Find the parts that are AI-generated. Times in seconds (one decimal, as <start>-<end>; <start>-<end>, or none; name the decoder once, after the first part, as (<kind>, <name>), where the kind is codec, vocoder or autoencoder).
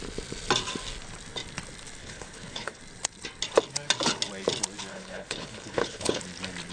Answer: 2.0-2.8 (codec, HILCodec); 4.9-6.2